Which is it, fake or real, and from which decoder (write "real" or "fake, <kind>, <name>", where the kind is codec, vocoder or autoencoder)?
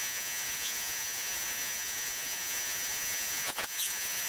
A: fake, vocoder, Vocos